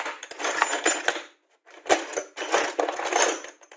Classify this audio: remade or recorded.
recorded